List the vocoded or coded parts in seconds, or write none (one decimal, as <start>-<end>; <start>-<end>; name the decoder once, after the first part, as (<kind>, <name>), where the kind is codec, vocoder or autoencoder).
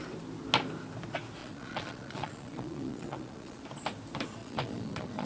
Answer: 1.4-3.6 (vocoder, Vocos); 4.4-5.3